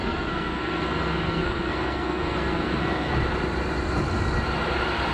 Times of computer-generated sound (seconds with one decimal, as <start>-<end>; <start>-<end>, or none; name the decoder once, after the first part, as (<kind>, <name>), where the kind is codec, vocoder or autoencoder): 0.0-3.1 (codec, SNAC)